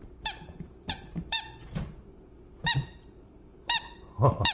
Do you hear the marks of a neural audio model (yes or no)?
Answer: yes